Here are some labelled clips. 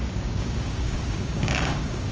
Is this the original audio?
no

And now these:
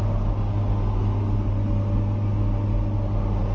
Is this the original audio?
yes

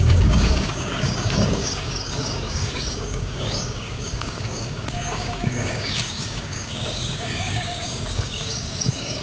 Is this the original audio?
no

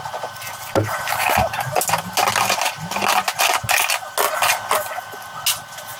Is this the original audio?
yes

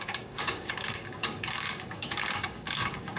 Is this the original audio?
no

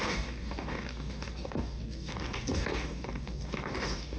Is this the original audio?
no